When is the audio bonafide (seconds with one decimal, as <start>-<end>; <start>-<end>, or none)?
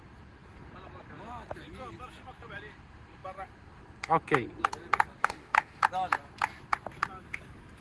0.0-5.2; 5.8-7.8